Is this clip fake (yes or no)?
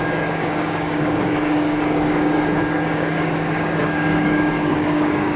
yes